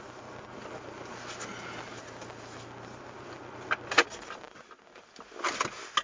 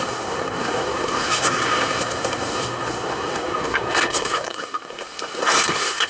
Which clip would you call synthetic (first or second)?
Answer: second